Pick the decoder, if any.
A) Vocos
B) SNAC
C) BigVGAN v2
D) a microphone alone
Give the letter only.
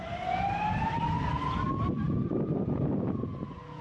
D